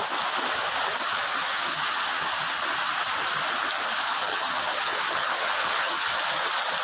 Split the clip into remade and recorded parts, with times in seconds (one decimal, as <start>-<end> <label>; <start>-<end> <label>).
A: 0.0-1.4 recorded; 1.4-2.3 remade; 2.3-4.1 recorded; 4.1-6.2 remade; 6.2-6.8 recorded